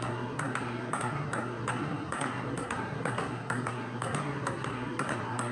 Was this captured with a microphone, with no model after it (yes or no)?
no